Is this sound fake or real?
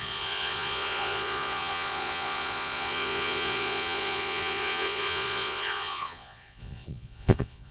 fake